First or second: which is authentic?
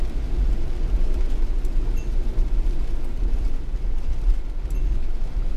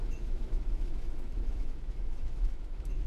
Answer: first